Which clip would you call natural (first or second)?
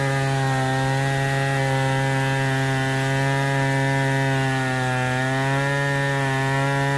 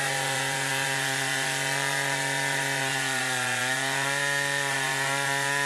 first